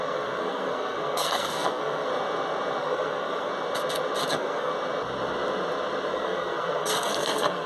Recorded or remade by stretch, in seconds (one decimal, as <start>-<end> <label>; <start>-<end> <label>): 0.0-2.1 remade; 2.1-2.8 recorded; 2.8-3.5 remade; 3.5-4.3 recorded; 4.3-4.7 remade; 4.7-6.1 recorded; 6.1-7.7 remade